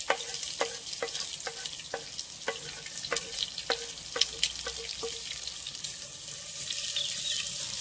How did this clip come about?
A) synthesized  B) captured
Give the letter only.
B